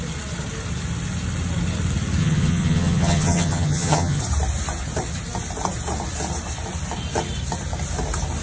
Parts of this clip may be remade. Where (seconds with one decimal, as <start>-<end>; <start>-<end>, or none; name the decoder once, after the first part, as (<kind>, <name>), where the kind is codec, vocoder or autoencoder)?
2.2-4.2 (vocoder, HiFi-GAN)